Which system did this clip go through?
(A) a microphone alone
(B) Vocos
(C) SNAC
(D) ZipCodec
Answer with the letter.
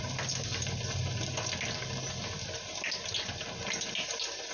A